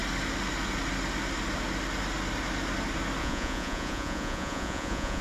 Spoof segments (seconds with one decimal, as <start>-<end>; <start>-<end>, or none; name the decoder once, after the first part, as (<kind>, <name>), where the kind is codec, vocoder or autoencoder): 3.2-5.2 (vocoder, Vocos)